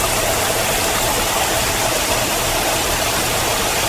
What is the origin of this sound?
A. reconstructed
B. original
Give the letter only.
A